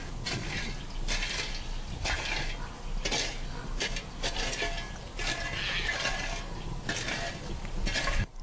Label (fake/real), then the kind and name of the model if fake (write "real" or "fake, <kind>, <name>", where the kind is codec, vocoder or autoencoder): real